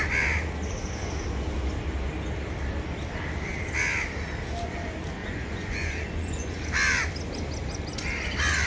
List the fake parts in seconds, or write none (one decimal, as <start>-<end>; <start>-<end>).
5.2-6.6